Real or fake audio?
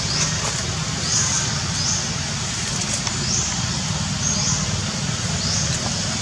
real